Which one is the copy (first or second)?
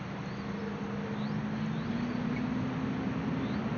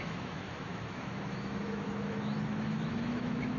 second